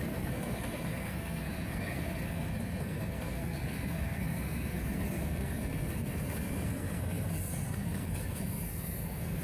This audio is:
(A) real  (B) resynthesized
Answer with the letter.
B